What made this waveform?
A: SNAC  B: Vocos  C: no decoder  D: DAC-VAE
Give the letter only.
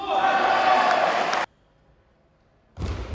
C